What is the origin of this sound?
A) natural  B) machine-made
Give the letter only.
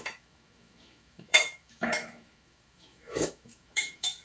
B